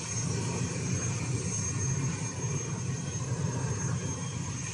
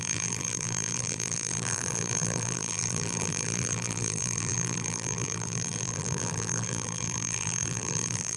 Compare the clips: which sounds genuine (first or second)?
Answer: first